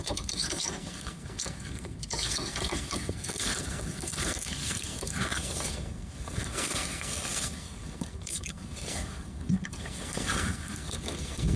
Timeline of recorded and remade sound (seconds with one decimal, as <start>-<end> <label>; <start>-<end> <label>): 0.0-11.6 remade